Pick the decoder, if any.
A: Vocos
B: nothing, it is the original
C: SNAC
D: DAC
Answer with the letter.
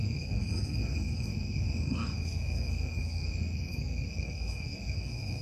C